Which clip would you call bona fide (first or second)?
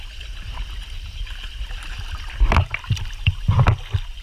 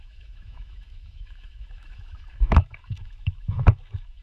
first